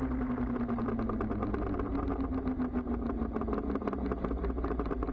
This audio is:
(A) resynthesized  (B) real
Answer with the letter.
B